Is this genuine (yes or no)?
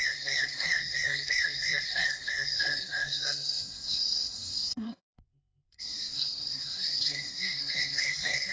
no